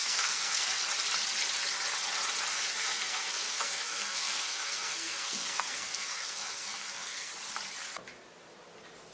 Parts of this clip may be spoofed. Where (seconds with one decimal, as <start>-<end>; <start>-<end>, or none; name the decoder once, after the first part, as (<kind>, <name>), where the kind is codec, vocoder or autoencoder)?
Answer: 0.0-0.8 (codec, SNAC); 2.5-7.3